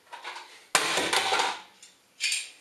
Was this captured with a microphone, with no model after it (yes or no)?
yes